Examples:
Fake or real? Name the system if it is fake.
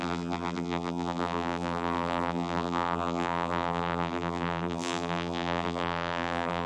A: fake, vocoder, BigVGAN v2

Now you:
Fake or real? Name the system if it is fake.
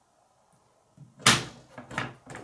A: real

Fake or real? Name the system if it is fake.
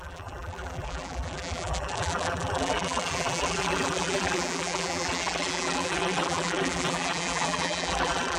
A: fake, vocoder, BigVGAN v2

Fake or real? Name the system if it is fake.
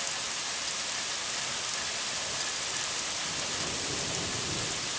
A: fake, vocoder, BigVGAN v2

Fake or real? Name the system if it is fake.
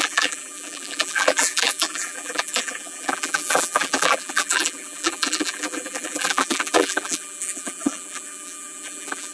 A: fake, vocoder, BigVGAN v2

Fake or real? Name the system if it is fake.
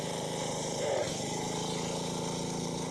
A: fake, vocoder, BigVGAN v2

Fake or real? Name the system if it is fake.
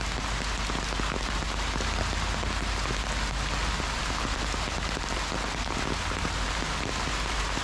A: real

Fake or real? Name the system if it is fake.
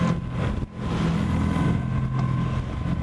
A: real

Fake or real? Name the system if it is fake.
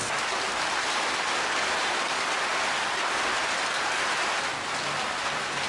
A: real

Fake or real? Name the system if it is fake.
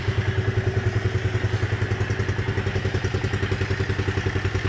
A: real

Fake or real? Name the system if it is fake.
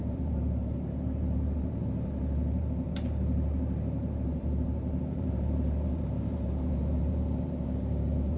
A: fake, vocoder, BigVGAN v2